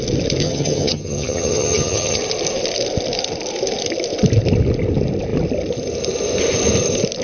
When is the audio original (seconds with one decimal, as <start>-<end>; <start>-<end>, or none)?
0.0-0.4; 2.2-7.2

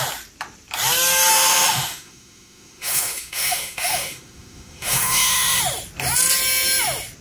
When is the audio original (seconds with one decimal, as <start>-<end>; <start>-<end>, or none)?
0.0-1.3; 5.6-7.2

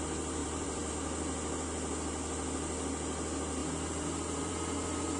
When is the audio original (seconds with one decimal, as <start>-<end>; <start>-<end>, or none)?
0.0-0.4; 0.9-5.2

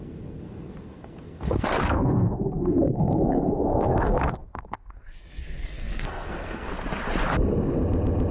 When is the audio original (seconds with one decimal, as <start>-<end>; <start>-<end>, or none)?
6.7-8.3

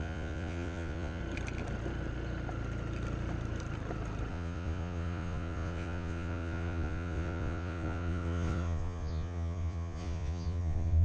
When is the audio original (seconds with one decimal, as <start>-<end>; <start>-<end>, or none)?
1.2-4.3